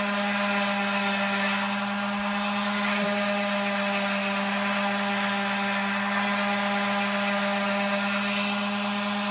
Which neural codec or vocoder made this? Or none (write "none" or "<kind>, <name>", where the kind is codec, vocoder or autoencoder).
none